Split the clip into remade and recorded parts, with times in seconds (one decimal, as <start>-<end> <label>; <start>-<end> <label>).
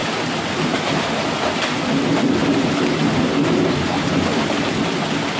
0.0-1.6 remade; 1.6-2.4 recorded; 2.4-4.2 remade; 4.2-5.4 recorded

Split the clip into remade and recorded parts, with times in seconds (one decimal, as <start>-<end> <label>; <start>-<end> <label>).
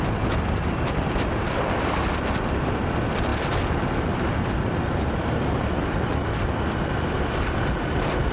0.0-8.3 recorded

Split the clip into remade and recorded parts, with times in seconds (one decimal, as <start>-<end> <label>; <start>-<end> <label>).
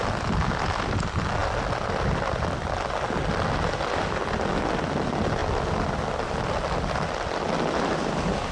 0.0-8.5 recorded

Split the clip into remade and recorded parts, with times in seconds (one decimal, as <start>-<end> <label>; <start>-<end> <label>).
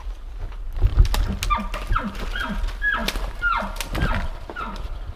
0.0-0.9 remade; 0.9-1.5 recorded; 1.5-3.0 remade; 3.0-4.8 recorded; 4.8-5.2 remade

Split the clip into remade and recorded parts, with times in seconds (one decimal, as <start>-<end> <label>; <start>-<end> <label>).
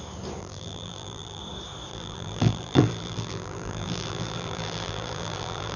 0.0-0.4 recorded; 0.4-1.4 remade; 1.4-1.9 recorded; 1.9-5.8 remade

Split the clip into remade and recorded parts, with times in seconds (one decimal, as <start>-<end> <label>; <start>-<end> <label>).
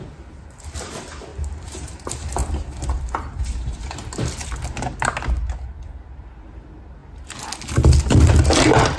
0.0-1.3 recorded; 1.3-1.9 remade; 1.9-9.0 recorded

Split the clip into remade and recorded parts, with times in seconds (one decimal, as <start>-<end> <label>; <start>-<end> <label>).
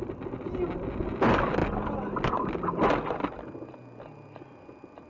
0.0-5.1 recorded